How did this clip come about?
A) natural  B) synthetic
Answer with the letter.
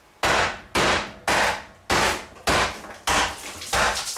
A